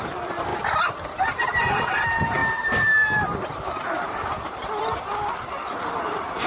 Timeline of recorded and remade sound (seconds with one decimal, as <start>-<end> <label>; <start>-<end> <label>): 0.0-0.5 remade; 0.5-1.3 recorded; 1.3-6.5 remade